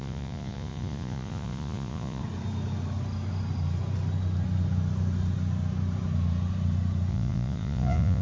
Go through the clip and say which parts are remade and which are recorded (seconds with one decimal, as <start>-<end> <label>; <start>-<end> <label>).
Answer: 0.0-2.2 remade; 2.2-7.1 recorded; 7.1-8.2 remade